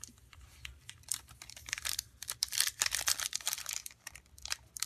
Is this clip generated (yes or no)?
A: yes